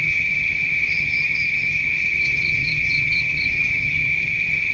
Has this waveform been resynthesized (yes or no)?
yes